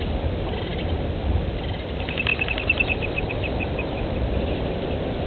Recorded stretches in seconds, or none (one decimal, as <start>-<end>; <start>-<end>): 0.0-5.3